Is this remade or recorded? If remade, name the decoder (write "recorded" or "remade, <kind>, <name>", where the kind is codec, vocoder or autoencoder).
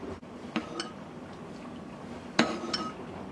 recorded